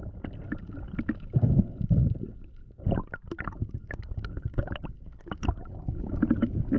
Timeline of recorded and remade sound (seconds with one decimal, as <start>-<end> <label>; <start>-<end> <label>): 0.0-6.8 recorded